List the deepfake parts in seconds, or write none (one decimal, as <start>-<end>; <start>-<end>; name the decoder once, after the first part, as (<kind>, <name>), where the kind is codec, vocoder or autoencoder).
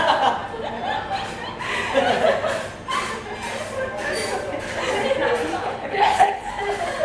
5.6-6.5 (codec, HILCodec)